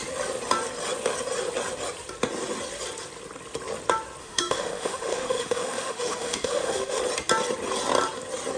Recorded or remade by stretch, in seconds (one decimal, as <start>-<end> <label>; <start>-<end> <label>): 0.0-4.2 recorded; 4.2-7.0 remade; 7.0-8.6 recorded